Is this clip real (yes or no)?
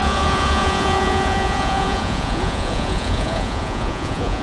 no